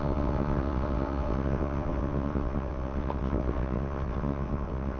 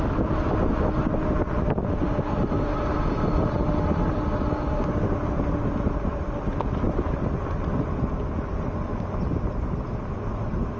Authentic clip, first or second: second